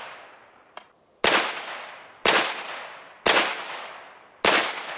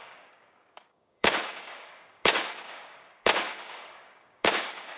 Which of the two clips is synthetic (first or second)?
second